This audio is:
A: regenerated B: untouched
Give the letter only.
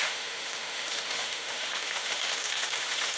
A